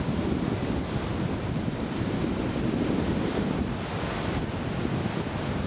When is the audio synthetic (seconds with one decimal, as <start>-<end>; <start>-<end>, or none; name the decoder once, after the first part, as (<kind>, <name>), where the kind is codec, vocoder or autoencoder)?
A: none